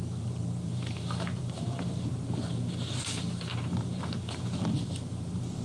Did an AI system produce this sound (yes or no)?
yes